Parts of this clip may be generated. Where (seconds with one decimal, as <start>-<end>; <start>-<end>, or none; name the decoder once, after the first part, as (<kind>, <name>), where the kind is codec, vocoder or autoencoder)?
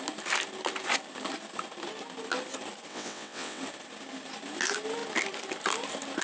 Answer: 2.9-3.6 (vocoder, WaveNeXt)